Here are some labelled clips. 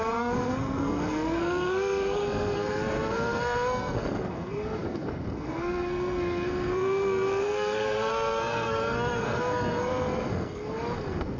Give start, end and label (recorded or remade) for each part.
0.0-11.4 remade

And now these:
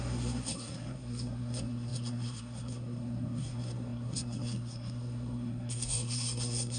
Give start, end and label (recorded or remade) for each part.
0.0-6.8 remade

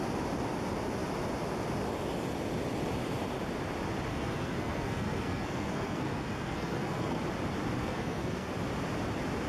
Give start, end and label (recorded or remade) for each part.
0.0-4.1 recorded; 4.1-7.2 remade; 7.2-7.8 recorded; 7.8-8.5 remade; 8.5-9.5 recorded

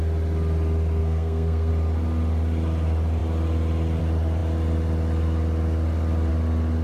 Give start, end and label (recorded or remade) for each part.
0.0-1.0 recorded; 1.0-1.7 remade; 1.7-6.8 recorded

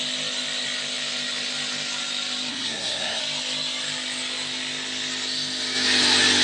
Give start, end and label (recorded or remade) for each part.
0.0-2.5 recorded; 2.5-3.2 remade; 3.2-6.4 recorded

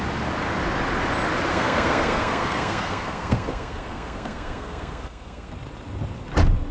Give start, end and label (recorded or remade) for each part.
0.0-1.5 recorded; 1.5-5.5 remade; 5.5-6.7 recorded